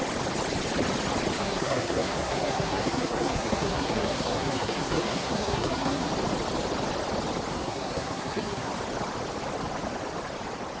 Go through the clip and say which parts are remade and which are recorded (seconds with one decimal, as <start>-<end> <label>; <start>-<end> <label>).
0.0-1.4 recorded; 1.4-6.1 remade; 6.1-7.5 recorded; 7.5-8.7 remade; 8.7-10.8 recorded